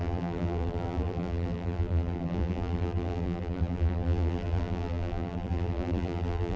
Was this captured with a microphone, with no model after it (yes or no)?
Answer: no